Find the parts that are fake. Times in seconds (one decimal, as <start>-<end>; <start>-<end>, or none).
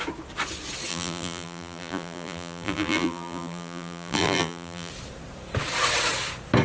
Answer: 0.9-4.9